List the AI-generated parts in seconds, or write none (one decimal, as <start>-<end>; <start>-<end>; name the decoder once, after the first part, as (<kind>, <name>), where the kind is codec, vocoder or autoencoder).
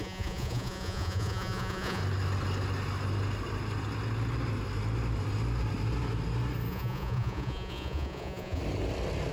0.0-2.0 (vocoder, Vocos); 6.7-8.6